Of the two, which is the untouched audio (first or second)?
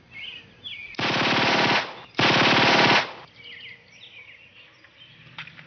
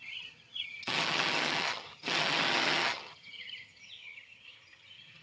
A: first